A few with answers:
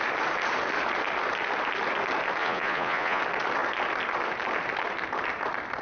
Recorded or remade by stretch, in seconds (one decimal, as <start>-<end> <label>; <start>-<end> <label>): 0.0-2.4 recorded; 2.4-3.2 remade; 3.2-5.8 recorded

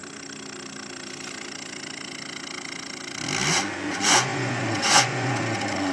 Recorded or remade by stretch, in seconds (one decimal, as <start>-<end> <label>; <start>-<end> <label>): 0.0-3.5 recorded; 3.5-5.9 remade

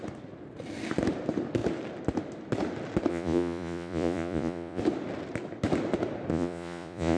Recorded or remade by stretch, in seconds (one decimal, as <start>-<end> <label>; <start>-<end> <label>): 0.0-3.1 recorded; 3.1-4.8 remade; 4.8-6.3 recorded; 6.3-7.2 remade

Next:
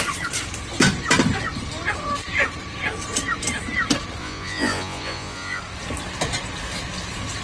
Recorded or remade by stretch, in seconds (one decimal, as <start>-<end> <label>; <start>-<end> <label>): 0.0-4.2 recorded; 4.2-5.6 remade; 5.6-7.4 recorded